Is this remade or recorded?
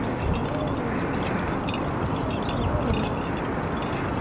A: recorded